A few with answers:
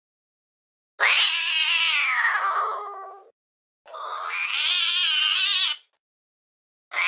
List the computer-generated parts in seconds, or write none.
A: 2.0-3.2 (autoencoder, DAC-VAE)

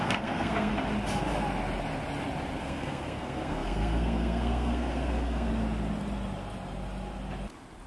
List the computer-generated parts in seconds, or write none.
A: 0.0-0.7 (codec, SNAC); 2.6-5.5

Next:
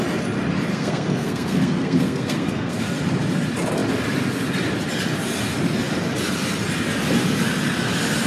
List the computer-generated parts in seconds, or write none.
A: 0.7-2.8 (codec, SNAC)

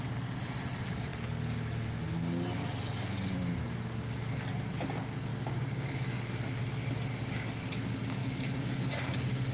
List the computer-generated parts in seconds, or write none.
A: 5.3-6.2 (codec, DAC); 8.2-9.5

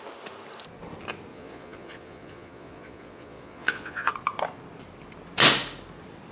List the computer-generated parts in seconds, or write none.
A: 1.3-4.1 (vocoder, Vocos)

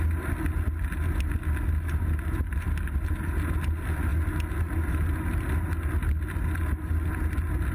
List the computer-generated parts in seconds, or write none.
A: none

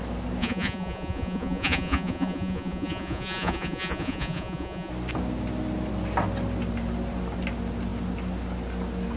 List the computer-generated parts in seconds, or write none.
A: 0.4-4.9 (vocoder, Vocos)

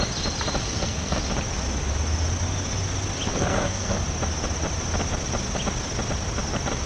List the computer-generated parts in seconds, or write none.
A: 0.6-1.2 (codec, SNAC); 3.3-4.0